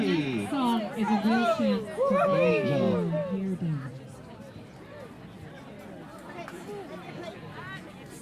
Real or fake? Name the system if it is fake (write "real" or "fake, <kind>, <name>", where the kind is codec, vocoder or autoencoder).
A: real